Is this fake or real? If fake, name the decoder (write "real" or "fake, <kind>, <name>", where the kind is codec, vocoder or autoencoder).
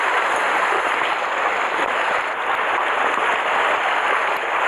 real